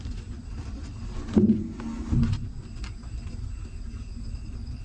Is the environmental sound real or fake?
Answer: real